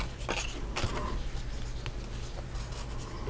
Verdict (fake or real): real